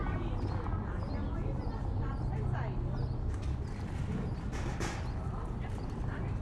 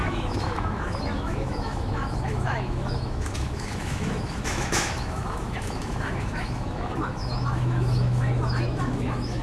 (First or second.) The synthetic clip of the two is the second